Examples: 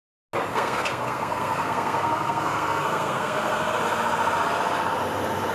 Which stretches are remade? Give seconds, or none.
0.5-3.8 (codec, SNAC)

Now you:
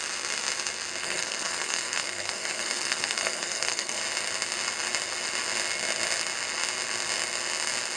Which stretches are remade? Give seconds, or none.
1.0-4.0 (codec, SNAC)